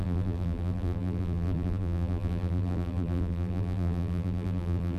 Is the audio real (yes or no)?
no